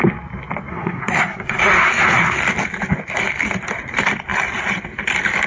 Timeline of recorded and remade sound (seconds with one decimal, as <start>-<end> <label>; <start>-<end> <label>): 0.0-0.7 recorded; 0.7-2.4 remade; 2.4-5.5 recorded